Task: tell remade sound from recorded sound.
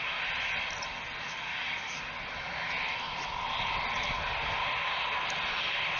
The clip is recorded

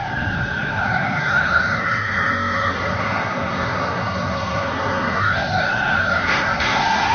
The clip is remade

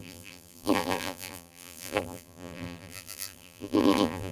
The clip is remade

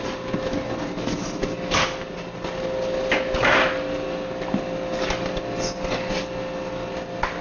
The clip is recorded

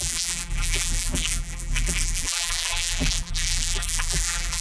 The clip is remade